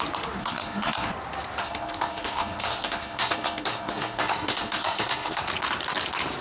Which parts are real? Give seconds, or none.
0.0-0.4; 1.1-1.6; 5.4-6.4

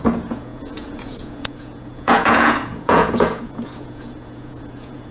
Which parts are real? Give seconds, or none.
none

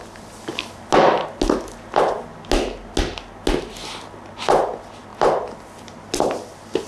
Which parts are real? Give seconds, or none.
0.0-6.9

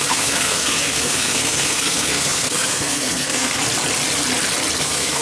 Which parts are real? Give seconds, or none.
3.6-4.8

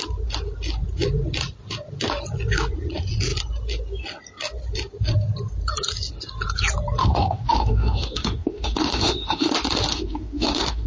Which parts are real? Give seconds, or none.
0.0-7.0; 9.5-9.9